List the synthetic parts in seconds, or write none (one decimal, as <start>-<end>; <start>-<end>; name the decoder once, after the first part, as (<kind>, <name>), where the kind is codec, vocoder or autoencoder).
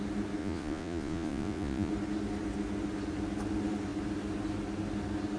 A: 0.4-1.9 (vocoder, Vocos)